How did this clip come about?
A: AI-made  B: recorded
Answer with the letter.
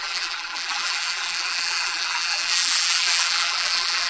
A